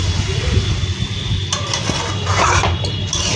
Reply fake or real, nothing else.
real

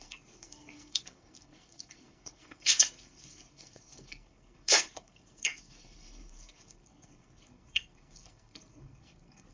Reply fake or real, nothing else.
fake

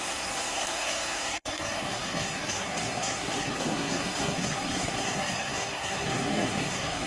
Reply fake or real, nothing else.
fake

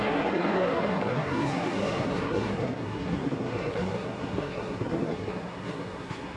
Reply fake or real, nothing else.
fake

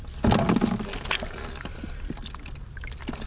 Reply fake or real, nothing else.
real